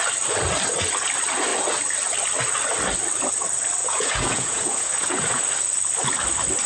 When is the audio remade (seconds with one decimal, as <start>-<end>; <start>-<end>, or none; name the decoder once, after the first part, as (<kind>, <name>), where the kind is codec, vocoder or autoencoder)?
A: 3.8-5.4 (vocoder, Vocos)

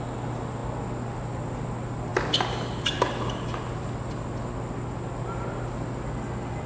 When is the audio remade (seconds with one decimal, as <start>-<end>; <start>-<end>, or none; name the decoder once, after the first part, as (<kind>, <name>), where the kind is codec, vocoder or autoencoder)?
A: none

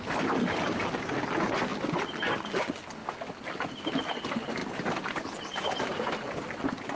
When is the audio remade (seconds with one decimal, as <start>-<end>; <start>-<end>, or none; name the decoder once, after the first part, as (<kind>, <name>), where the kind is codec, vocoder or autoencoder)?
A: none

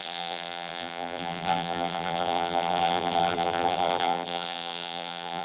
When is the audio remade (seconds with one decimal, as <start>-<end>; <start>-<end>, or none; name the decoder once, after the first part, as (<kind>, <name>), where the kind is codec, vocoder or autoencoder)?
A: 0.0-5.4 (vocoder, BigVGAN v2)

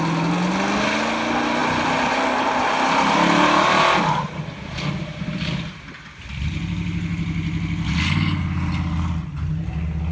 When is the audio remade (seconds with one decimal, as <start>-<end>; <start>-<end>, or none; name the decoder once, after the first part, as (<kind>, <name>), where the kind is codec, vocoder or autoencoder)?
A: 1.6-2.1 (vocoder, BigVGAN v2)